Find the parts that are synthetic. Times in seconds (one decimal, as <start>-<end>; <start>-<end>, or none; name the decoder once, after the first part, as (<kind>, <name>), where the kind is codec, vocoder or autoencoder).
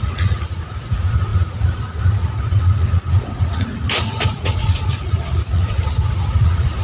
0.0-6.8 (vocoder, Vocos)